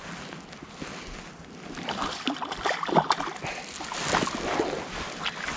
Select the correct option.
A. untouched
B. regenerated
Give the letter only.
A